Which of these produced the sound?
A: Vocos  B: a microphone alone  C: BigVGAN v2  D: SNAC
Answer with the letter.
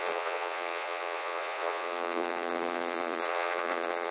A